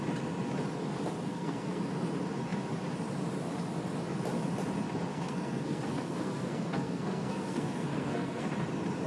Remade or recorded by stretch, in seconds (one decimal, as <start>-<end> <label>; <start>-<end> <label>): 0.0-1.3 recorded; 1.3-1.8 remade; 1.8-5.1 recorded; 5.1-8.5 remade; 8.5-9.1 recorded